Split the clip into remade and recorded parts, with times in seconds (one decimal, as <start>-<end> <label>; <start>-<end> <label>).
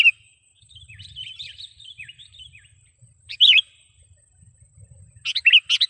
0.0-1.4 recorded; 1.4-4.9 remade; 4.9-5.9 recorded